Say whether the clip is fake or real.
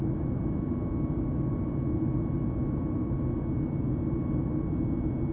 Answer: real